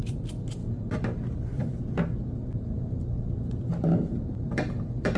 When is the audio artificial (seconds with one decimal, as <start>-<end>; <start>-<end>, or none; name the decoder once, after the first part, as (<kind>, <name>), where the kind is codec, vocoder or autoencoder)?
0.6-1.8 (vocoder, BigVGAN v2); 3.7-5.2